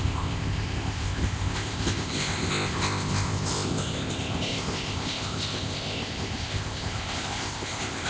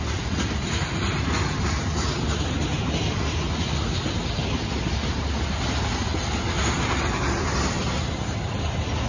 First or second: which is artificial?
first